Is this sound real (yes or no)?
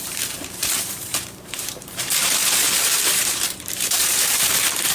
no